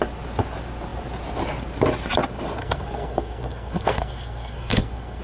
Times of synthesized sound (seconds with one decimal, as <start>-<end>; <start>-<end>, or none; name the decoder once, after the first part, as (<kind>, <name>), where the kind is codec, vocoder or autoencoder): 2.6-5.2 (codec, SNAC)